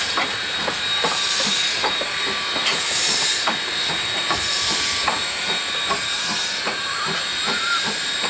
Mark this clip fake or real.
fake